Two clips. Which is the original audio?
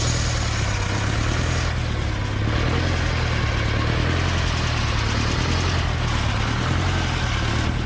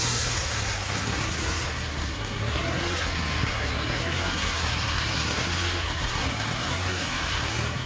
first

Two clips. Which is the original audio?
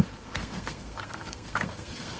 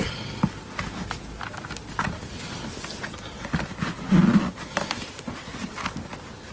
second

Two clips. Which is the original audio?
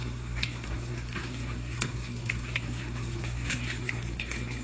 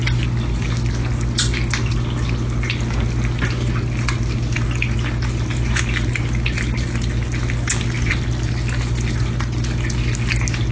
second